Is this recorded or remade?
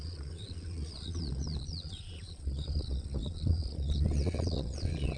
remade